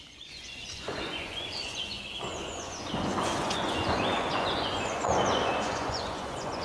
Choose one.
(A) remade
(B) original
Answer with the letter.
A